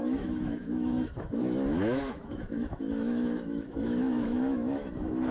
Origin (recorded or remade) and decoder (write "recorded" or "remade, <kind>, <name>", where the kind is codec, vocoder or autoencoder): remade, autoencoder, DAC-VAE